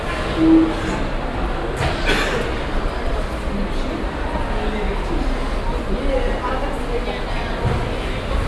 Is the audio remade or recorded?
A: recorded